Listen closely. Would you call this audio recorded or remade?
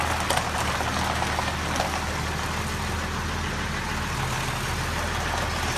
recorded